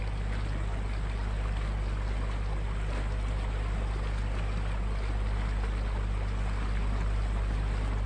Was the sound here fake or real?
real